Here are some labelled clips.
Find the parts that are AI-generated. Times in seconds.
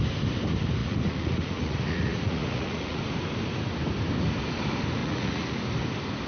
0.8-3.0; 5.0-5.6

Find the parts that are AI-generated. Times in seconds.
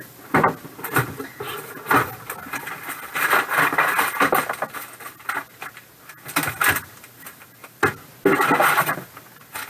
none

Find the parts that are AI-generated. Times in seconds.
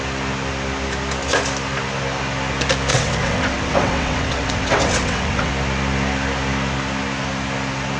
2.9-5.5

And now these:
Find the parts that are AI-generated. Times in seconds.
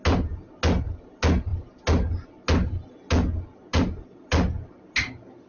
none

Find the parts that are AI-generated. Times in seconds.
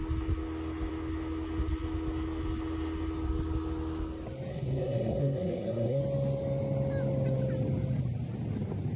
4.5-6.0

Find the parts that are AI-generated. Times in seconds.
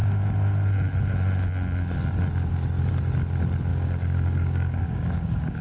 3.7-5.6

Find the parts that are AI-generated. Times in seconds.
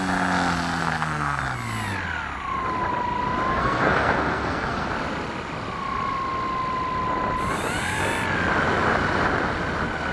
0.8-1.4; 3.5-4.9